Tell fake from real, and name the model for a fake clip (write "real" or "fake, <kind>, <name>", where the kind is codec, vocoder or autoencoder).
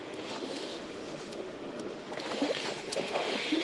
fake, autoencoder, DAC-VAE